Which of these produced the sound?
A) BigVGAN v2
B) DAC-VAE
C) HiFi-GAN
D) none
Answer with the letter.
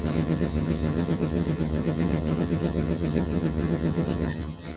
C